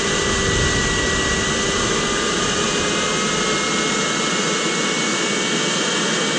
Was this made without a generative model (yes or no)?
yes